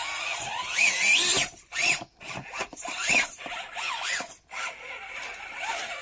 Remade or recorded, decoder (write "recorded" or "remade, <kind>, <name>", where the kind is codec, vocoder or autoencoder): remade, vocoder, BigVGAN v2